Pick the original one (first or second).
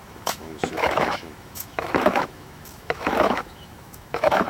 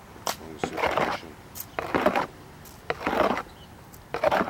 second